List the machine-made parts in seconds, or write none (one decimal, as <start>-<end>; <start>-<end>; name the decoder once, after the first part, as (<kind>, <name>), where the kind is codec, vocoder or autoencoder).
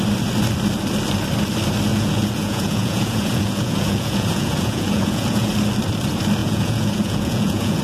1.9-5.5 (vocoder, Vocos); 6.4-7.8